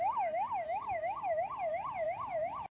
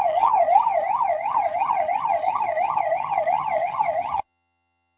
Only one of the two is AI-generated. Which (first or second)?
second